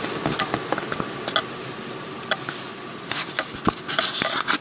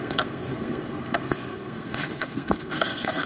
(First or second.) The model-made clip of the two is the second